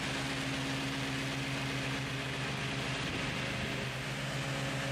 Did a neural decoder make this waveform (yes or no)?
no